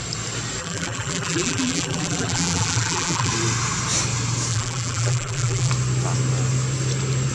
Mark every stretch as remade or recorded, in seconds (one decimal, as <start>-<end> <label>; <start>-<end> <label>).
0.0-0.6 recorded; 0.6-3.3 remade; 3.3-4.5 recorded; 4.5-5.7 remade; 5.7-7.3 recorded